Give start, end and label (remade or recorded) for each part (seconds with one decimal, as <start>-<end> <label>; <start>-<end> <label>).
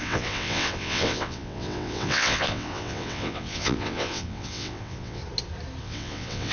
0.0-5.2 remade; 5.2-5.8 recorded; 5.8-6.5 remade